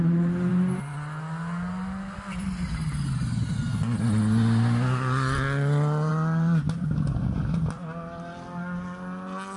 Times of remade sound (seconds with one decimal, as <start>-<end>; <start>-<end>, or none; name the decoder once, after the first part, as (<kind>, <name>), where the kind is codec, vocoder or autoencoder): 6.1-7.2 (vocoder, BigVGAN v2)